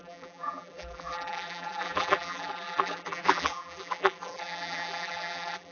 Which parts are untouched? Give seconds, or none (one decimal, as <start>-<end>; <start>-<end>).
none